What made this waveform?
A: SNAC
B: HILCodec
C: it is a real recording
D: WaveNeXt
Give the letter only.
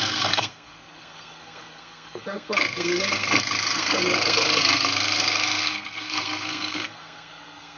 A